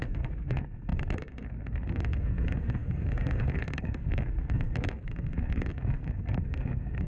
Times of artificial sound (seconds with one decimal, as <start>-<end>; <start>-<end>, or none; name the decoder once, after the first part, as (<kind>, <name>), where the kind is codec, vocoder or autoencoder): 0.0-7.1 (codec, SNAC)